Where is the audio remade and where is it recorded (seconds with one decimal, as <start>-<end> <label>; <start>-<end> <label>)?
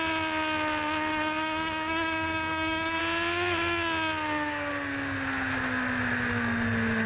0.0-1.1 recorded; 1.1-3.0 remade; 3.0-7.1 recorded